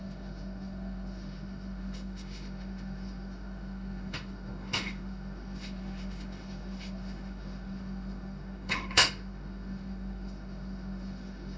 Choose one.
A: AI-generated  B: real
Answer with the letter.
A